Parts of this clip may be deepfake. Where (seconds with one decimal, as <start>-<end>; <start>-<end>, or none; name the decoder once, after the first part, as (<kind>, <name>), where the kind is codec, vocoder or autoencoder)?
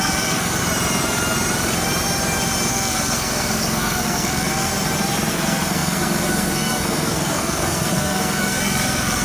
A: 0.0-0.6 (codec, SNAC); 2.7-4.7; 5.3-9.2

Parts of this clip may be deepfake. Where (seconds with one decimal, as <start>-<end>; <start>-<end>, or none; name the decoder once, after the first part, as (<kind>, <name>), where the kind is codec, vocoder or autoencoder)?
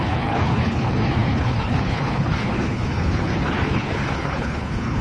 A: 0.0-5.0 (codec, HILCodec)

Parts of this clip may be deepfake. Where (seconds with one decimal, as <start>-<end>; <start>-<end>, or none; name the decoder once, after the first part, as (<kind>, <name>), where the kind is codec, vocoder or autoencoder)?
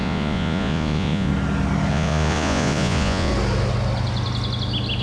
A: 0.0-1.3 (vocoder, Vocos); 1.9-3.3